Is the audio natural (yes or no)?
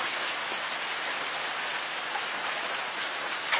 yes